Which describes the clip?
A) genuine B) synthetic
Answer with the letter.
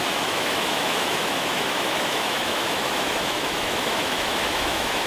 B